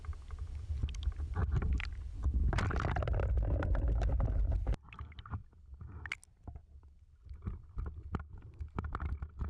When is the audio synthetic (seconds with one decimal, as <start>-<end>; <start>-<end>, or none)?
none